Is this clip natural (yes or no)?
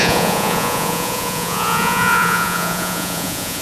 no